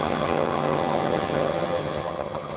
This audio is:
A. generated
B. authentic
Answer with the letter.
A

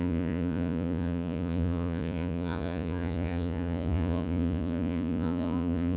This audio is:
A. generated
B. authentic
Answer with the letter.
A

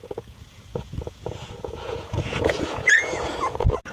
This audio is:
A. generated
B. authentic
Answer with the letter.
A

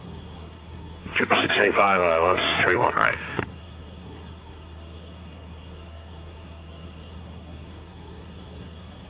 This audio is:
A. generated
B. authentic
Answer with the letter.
A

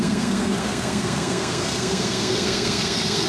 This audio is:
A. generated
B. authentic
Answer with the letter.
A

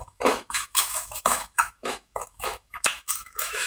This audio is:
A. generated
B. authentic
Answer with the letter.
A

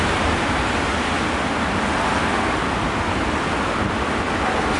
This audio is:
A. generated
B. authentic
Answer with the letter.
B